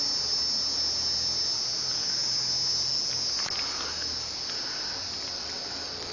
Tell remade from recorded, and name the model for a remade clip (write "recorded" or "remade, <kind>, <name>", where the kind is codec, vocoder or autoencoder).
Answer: recorded